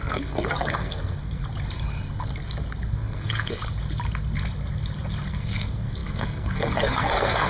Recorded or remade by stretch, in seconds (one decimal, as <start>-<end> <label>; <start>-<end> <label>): 0.0-1.4 remade; 1.4-2.9 recorded; 2.9-3.6 remade; 3.6-5.3 recorded; 5.3-7.5 remade